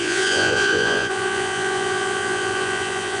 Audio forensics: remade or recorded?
remade